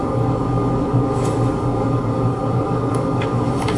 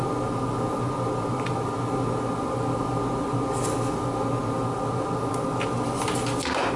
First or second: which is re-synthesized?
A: first